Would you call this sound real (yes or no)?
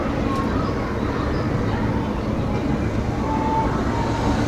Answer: yes